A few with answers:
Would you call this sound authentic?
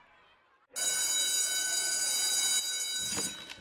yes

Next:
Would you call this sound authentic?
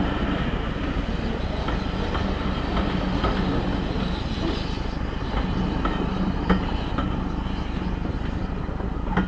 yes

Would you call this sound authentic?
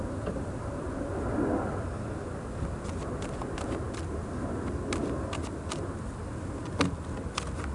yes